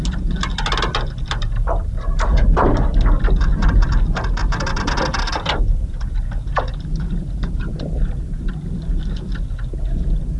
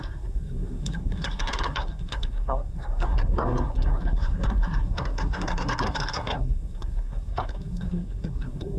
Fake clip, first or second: second